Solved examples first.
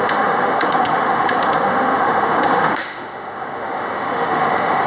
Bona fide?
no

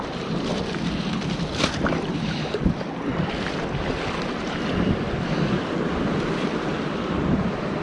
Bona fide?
no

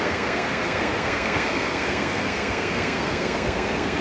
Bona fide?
no